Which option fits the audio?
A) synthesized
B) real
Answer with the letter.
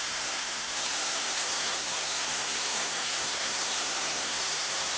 A